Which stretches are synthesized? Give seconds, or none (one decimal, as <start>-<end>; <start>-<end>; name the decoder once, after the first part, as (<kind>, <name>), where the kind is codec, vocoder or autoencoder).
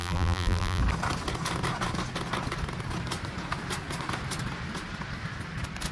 0.0-0.8 (vocoder, BigVGAN v2)